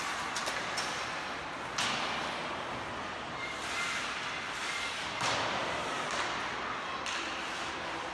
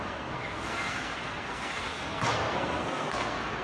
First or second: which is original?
first